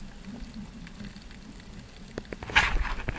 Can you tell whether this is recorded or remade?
recorded